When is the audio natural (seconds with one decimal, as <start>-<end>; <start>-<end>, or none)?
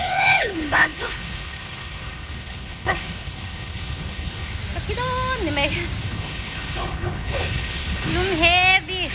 4.6-6.0; 8.1-9.1